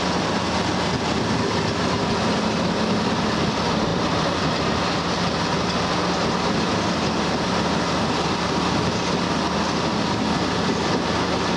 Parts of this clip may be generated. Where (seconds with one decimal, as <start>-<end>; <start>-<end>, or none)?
none